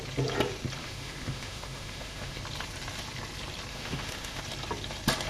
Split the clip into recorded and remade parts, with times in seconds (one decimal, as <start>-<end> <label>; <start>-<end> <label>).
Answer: 0.0-0.8 recorded; 0.8-2.4 remade; 2.4-3.7 recorded; 3.7-4.4 remade; 4.4-5.3 recorded